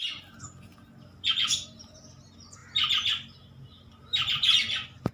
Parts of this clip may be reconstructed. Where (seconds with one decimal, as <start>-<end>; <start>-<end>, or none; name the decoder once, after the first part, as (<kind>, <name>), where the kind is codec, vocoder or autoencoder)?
none